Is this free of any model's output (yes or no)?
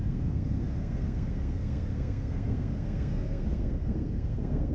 no